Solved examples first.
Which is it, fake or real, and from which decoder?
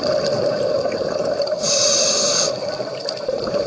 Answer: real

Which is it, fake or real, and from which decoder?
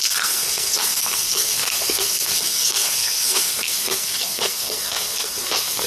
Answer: fake, codec, SNAC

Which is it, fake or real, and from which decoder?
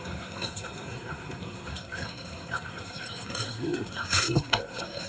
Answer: fake, codec, SNAC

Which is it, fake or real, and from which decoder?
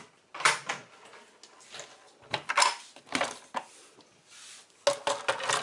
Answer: real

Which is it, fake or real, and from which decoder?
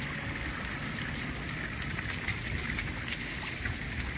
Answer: real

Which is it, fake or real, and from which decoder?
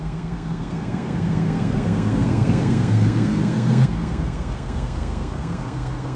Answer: fake, codec, SNAC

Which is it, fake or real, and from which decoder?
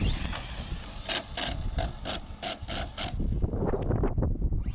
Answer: real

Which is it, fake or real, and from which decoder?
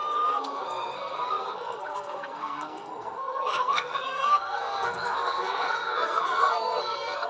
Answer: fake, codec, SNAC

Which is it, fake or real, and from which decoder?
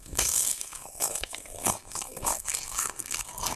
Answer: fake, codec, SNAC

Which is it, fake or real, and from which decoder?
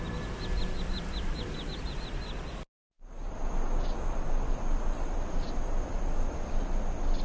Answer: real